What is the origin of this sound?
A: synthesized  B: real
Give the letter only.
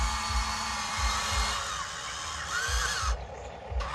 B